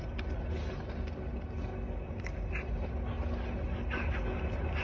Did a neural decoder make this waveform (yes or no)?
no